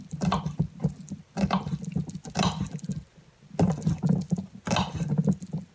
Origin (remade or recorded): recorded